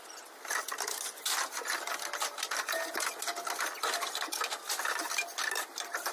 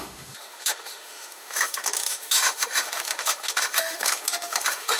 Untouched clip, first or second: first